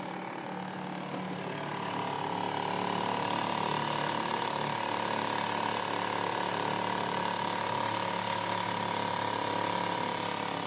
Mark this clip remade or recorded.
recorded